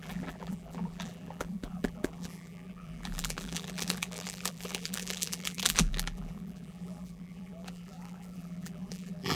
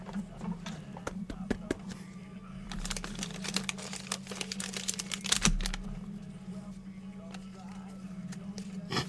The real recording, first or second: second